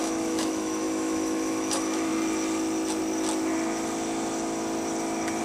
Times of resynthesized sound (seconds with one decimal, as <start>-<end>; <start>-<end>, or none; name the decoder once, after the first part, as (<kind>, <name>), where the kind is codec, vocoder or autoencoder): 0.0-2.1 (autoencoder, DAC-VAE)